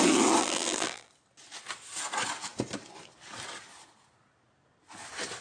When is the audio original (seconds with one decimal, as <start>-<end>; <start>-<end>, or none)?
0.0-0.4; 1.1-5.4